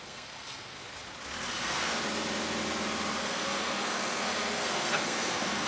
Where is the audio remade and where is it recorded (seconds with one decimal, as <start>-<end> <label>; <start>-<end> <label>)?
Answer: 0.0-0.8 remade; 0.8-1.5 recorded; 1.5-1.9 remade; 1.9-3.2 recorded; 3.2-5.7 remade